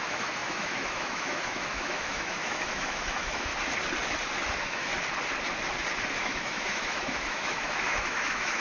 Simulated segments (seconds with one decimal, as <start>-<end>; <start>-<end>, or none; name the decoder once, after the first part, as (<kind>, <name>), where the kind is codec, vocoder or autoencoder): 0.0-3.5 (autoencoder, DAC-VAE); 4.5-4.9; 6.2-8.6